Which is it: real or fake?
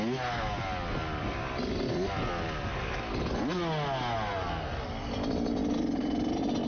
real